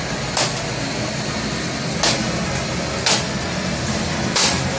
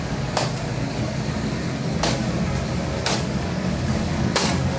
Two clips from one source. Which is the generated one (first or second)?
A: second